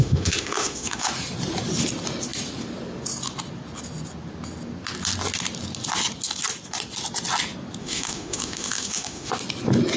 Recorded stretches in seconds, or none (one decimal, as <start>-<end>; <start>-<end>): 1.1-7.8; 9.3-10.0